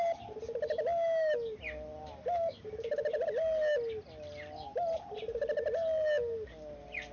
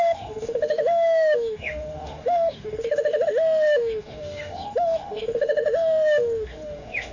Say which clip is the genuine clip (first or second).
first